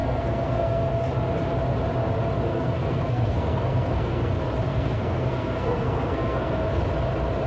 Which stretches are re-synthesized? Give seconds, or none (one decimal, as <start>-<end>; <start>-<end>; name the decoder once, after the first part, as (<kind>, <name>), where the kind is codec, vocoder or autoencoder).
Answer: 0.0-0.9 (codec, SNAC); 2.5-4.3; 4.7-6.8

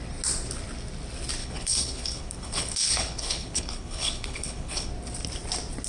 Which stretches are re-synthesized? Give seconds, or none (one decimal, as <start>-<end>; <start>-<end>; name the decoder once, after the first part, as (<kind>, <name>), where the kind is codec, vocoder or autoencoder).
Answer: 1.4-4.9 (codec, HILCodec)

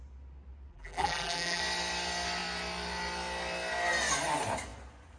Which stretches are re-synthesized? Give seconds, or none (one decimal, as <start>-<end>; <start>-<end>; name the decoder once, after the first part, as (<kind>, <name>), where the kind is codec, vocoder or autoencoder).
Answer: 0.7-1.6 (vocoder, BigVGAN v2)

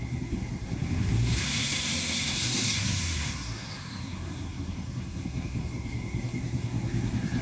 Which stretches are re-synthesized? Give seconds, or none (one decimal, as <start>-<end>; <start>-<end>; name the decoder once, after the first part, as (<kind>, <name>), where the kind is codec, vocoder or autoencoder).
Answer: 0.0-7.4 (codec, SNAC)

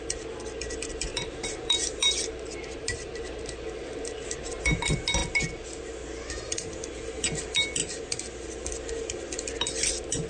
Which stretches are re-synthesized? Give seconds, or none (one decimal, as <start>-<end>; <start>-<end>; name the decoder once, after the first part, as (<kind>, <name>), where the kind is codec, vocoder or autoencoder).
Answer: 1.1-4.6 (vocoder, BigVGAN v2)

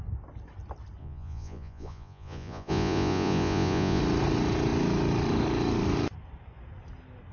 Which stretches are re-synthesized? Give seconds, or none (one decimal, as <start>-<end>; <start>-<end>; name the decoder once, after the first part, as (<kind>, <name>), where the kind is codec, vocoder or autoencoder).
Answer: 1.0-4.0 (vocoder, Vocos)

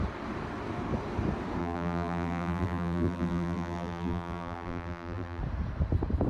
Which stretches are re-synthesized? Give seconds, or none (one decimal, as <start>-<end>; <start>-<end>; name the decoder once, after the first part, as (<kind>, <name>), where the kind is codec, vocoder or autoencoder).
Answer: 1.6-5.4 (vocoder, BigVGAN v2)